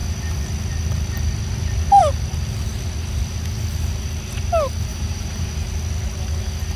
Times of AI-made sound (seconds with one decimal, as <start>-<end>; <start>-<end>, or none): 4.9-5.5